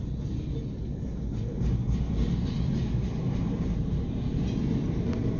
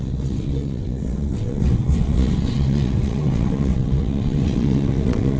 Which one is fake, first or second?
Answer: second